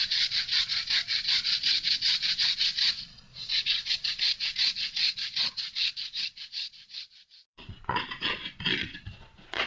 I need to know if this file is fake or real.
fake